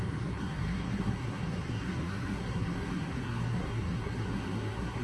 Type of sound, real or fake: fake